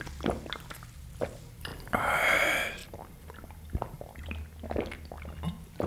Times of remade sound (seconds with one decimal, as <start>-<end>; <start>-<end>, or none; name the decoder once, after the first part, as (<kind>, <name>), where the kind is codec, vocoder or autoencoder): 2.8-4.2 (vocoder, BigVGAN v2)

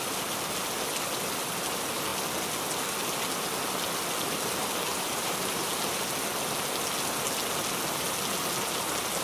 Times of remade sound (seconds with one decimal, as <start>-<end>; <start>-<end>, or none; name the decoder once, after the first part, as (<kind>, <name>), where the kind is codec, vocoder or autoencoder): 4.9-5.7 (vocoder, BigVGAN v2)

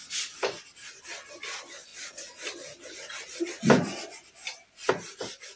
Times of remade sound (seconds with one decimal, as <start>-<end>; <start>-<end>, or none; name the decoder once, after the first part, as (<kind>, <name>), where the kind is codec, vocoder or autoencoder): none